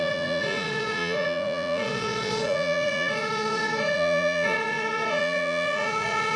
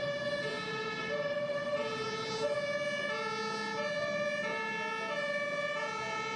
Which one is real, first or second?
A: second